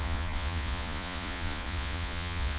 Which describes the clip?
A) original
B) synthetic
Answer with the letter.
B